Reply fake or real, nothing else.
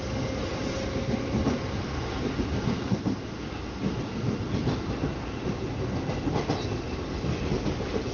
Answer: real